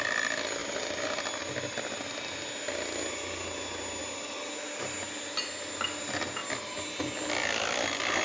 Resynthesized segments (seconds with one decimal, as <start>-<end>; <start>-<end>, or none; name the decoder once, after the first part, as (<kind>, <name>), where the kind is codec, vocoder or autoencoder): none

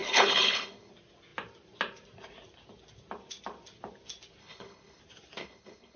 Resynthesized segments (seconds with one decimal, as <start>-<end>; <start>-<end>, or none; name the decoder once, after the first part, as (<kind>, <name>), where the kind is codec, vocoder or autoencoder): 0.0-0.9 (codec, HILCodec); 4.4-5.0; 5.4-6.0

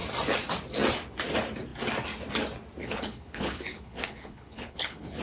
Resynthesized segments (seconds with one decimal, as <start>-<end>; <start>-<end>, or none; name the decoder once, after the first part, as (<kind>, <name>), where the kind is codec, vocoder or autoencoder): 2.8-5.2 (codec, HILCodec)

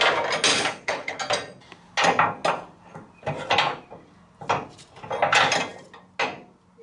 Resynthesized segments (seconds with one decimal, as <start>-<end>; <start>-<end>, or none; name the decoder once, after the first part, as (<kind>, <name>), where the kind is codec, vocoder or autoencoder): 0.5-1.2 (codec, HILCodec)